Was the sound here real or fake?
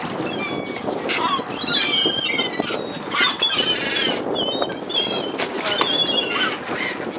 real